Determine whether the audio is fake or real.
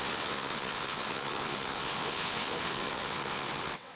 fake